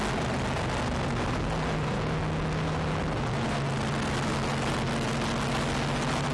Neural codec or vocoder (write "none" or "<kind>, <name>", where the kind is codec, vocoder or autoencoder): none